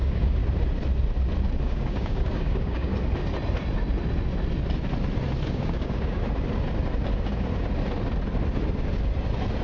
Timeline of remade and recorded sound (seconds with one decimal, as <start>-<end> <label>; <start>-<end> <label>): 0.0-0.4 remade; 0.4-1.6 recorded; 1.6-2.9 remade; 2.9-5.5 recorded; 5.5-6.2 remade; 6.2-9.6 recorded